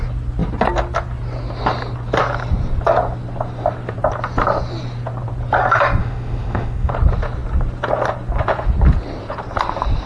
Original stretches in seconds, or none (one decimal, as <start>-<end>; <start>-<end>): 0.0-6.0; 6.9-10.1